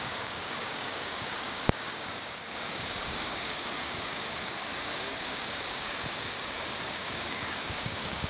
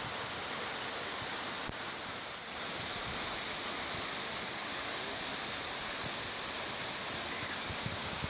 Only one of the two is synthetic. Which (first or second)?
first